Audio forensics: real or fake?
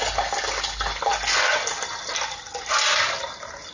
real